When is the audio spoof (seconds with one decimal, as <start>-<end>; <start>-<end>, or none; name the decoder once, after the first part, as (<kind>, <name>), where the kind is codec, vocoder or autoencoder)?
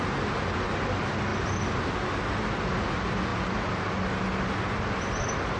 none